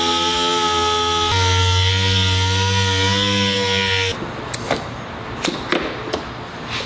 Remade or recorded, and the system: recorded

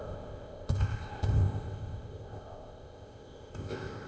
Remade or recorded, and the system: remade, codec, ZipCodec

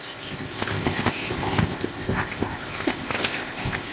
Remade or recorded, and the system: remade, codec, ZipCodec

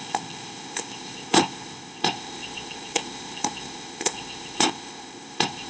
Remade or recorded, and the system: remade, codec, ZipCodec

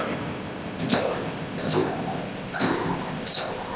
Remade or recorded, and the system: remade, codec, ZipCodec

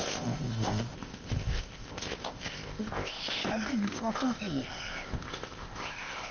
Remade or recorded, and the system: remade, codec, ZipCodec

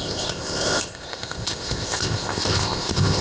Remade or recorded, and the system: remade, codec, ZipCodec